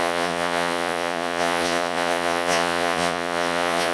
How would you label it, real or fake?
fake